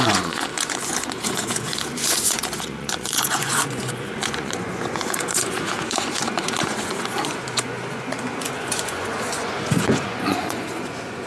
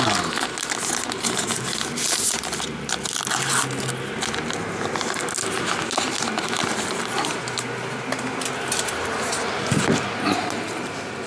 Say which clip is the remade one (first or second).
first